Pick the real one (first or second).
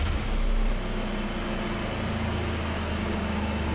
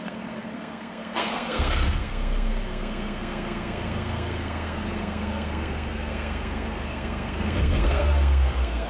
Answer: first